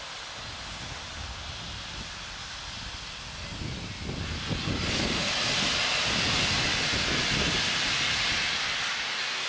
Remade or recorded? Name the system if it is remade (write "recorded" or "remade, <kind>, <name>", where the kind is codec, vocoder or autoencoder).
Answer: recorded